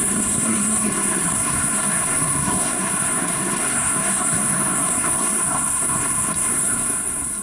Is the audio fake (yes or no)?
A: yes